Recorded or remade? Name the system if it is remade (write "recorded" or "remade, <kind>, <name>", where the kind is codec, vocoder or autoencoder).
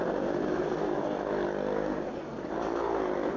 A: recorded